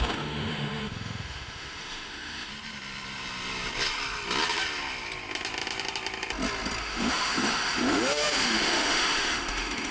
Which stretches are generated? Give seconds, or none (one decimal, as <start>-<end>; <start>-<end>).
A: 0.0-2.5; 6.8-9.9